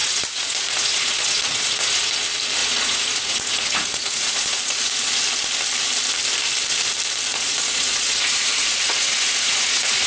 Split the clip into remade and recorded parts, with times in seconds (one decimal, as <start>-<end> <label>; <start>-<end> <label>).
0.0-2.1 remade; 2.1-2.6 recorded; 2.6-5.2 remade; 5.2-7.3 recorded; 7.3-10.1 remade